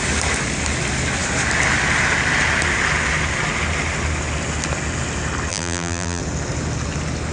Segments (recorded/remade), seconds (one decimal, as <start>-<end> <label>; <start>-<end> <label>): 0.0-5.5 recorded; 5.5-6.2 remade; 6.2-7.3 recorded